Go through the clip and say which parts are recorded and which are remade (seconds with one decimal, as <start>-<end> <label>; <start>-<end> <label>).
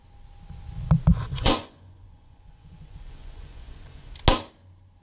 0.0-1.1 recorded; 1.1-4.1 remade; 4.1-5.0 recorded